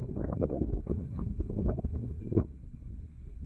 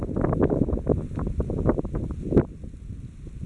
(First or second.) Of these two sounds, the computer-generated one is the first